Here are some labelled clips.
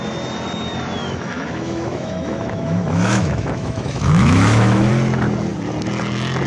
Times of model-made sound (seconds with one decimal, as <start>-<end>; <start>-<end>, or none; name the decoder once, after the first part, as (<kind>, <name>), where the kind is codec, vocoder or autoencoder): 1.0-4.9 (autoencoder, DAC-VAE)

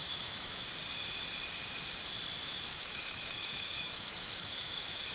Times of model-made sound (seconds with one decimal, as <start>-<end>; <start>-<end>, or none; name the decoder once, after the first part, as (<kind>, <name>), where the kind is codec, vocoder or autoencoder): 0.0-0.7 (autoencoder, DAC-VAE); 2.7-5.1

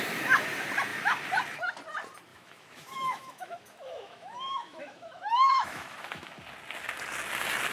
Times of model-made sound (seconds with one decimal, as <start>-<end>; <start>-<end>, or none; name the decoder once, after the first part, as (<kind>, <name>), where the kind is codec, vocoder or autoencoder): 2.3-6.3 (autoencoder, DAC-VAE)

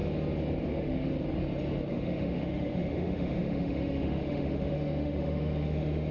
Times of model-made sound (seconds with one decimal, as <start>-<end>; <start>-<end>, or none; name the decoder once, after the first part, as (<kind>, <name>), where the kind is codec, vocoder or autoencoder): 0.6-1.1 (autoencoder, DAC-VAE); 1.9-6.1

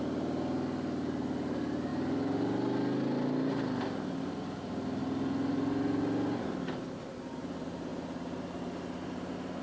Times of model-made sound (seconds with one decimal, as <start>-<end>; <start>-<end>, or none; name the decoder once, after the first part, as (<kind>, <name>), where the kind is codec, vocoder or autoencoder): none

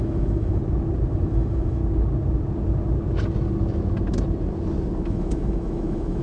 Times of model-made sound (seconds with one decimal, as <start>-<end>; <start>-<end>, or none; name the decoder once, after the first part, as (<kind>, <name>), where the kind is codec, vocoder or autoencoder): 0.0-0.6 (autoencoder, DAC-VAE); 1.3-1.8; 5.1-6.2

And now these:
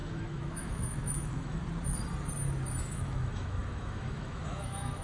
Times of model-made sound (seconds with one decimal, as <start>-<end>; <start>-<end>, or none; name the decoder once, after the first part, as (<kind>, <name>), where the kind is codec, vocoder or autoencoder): 0.0-1.6 (autoencoder, DAC-VAE); 2.8-5.0

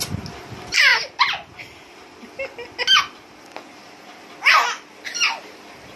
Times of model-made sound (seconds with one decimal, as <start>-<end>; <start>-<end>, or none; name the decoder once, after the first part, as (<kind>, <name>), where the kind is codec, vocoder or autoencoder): none